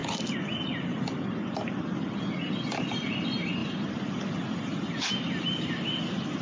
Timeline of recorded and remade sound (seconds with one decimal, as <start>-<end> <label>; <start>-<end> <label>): 0.0-6.4 recorded